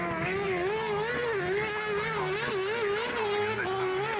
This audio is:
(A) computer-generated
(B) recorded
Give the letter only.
B